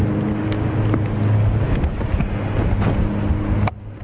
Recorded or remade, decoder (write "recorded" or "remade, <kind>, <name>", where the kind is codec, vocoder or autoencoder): recorded